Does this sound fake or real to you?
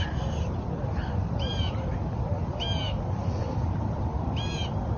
real